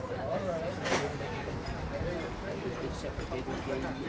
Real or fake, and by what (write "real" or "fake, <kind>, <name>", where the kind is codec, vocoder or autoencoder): real